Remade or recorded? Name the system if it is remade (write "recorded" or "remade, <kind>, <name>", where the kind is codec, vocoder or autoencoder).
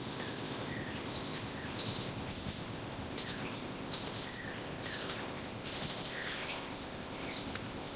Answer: remade, codec, ZipCodec